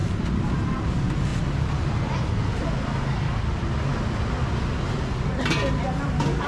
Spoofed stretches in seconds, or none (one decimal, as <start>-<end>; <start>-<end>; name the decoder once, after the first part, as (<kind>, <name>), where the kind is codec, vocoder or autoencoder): none